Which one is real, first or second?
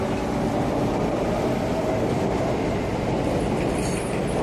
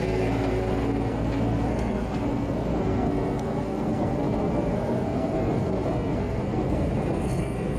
first